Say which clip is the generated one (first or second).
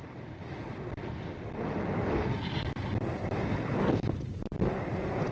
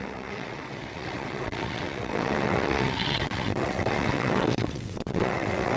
second